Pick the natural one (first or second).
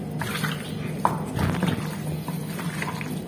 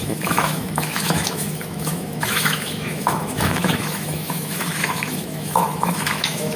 first